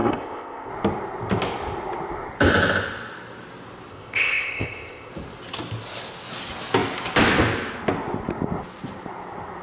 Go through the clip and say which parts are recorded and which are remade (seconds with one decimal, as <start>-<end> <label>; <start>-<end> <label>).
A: 0.0-0.7 remade; 0.7-3.9 recorded; 3.9-5.1 remade; 5.1-9.6 recorded